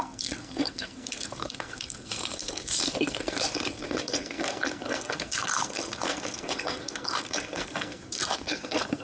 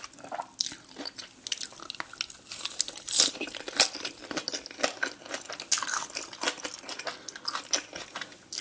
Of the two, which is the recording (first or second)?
second